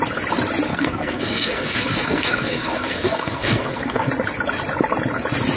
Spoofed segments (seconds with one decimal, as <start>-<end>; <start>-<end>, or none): 0.7-4.1